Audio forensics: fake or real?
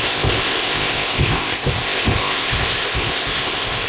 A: fake